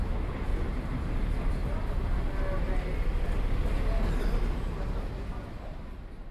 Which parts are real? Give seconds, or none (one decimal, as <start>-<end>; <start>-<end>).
0.0-6.3